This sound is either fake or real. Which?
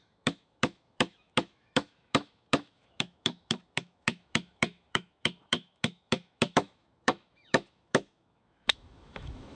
fake